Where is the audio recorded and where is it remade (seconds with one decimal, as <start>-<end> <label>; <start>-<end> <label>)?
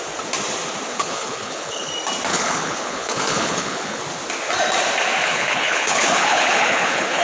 0.0-0.9 recorded; 0.9-1.9 remade; 1.9-2.3 recorded; 2.3-4.0 remade; 4.0-5.2 recorded; 5.2-7.2 remade